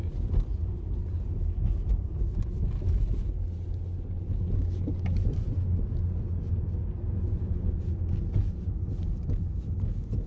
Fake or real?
real